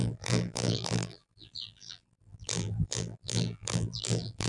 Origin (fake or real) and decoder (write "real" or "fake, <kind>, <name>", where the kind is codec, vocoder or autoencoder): fake, vocoder, BigVGAN v2